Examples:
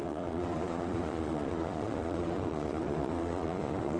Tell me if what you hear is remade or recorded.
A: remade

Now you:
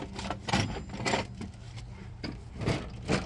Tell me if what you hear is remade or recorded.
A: recorded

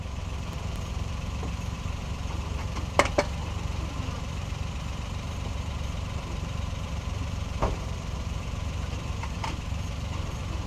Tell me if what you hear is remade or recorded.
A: remade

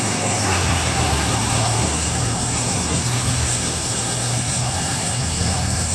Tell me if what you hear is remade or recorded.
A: remade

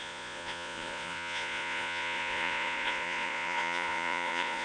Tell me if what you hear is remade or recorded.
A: remade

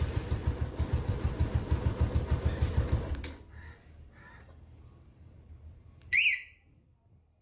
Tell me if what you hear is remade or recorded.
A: remade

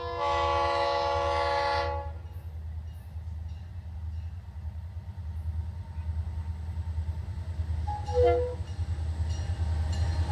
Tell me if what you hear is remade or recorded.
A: recorded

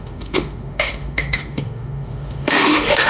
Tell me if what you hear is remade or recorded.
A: remade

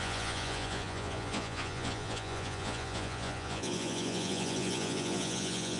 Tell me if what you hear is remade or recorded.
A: remade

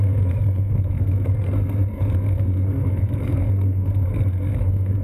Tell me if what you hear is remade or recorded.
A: remade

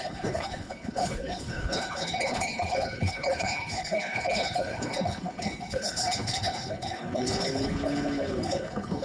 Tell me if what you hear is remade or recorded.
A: remade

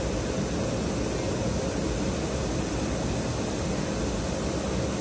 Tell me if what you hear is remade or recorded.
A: recorded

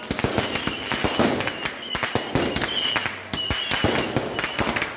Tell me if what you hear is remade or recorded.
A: recorded